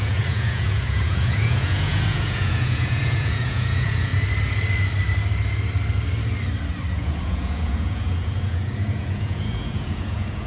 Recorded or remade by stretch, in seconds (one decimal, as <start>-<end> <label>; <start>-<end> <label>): 0.0-4.1 remade; 4.1-6.9 recorded; 6.9-10.5 remade